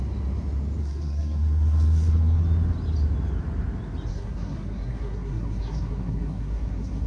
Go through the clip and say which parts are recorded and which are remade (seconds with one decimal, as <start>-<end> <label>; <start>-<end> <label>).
0.0-0.8 recorded; 0.8-2.4 remade; 2.4-4.1 recorded; 4.1-7.1 remade